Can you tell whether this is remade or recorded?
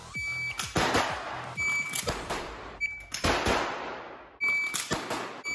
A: recorded